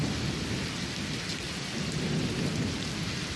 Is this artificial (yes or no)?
no